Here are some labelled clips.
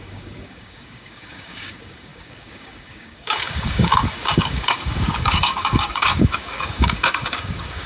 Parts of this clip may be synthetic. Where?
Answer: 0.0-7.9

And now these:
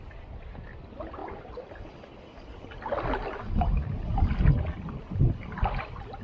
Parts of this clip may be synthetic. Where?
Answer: none

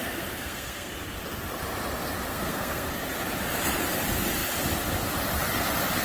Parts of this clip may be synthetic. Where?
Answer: 0.0-0.9; 2.3-2.9

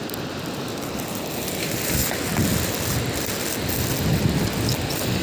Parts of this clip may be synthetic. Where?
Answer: none

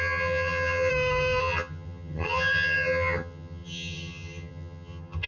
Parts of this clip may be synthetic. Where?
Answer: 0.0-0.9; 1.4-5.3

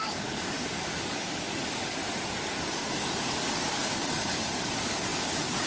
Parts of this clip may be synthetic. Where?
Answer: 0.0-2.0; 2.6-5.7